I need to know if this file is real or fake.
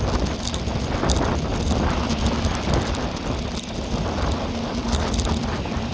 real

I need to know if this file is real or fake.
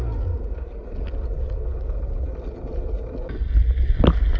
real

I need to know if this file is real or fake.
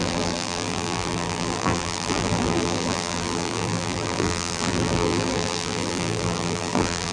fake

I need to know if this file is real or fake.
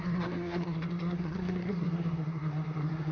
fake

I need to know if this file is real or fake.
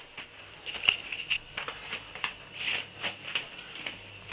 real